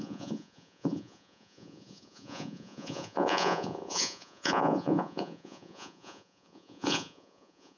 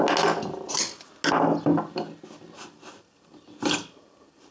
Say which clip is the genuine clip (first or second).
second